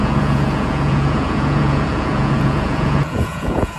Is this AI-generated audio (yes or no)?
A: yes